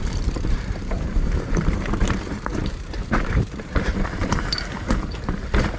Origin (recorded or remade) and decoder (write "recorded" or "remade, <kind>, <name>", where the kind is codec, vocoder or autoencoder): remade, vocoder, BigVGAN v2